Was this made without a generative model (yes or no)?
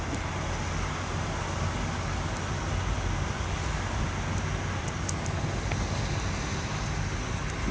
yes